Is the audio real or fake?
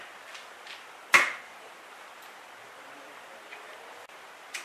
real